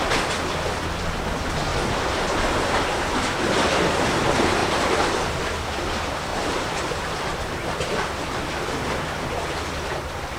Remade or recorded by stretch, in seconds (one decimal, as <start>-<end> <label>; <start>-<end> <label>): 0.0-4.6 recorded; 4.6-5.4 remade; 5.4-6.3 recorded; 6.3-7.0 remade; 7.0-10.4 recorded